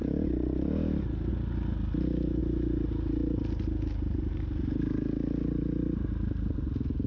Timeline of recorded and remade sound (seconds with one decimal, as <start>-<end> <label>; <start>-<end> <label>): 0.0-7.1 recorded